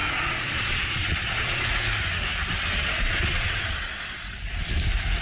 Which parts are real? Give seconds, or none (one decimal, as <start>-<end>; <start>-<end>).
1.6-2.8; 4.2-5.2